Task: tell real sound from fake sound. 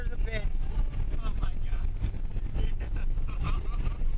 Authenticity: real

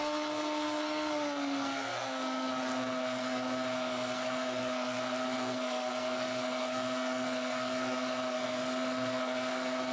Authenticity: fake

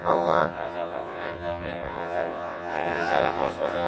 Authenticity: fake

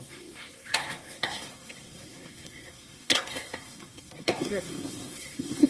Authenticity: fake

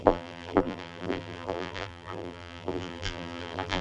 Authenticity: fake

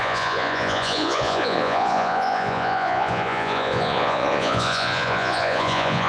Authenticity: fake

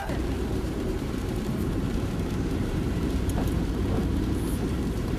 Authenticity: fake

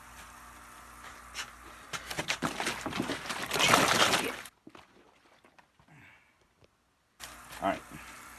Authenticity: real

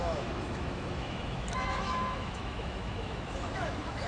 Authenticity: fake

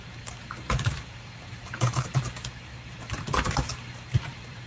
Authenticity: fake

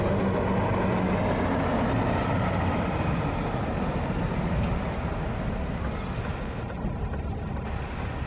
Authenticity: real